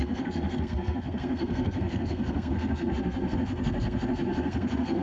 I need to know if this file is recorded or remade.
remade